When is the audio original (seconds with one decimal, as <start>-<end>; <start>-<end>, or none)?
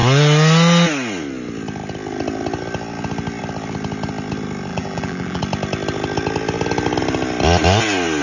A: 0.0-4.7; 5.4-8.2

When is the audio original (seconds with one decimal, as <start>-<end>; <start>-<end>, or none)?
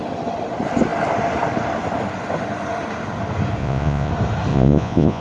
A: 0.0-3.6; 4.1-4.5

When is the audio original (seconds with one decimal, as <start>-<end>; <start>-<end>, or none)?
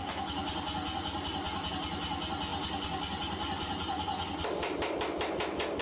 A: 0.0-5.8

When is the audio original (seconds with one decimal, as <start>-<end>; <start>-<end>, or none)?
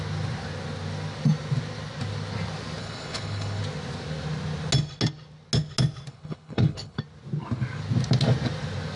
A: 0.0-2.8; 3.6-6.1; 7.0-9.0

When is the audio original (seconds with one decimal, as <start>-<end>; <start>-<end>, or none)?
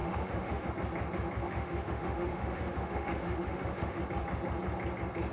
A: 0.7-1.4; 4.0-5.3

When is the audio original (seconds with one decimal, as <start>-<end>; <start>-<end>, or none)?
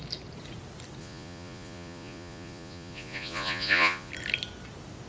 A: 0.0-1.0; 4.1-5.1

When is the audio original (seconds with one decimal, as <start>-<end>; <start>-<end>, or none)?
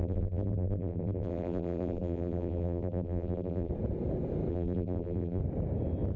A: 3.7-4.5; 5.4-6.2